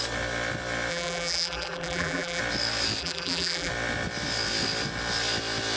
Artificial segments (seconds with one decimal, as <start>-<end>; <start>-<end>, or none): 0.9-2.4; 3.0-3.7